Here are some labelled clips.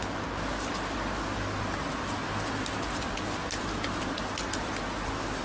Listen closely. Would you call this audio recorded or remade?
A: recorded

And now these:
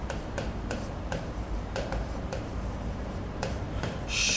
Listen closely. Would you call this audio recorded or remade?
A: remade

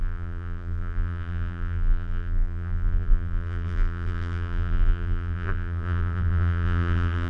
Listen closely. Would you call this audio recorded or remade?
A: remade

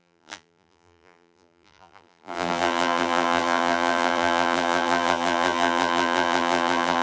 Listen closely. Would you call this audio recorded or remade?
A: remade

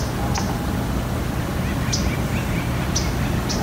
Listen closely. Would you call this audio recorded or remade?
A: recorded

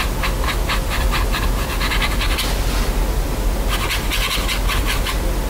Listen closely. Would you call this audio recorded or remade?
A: recorded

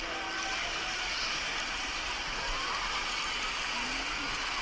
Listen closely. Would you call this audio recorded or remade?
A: recorded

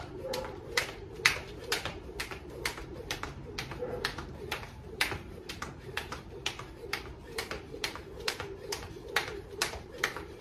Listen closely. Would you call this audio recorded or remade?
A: remade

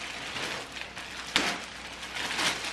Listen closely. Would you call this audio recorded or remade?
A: recorded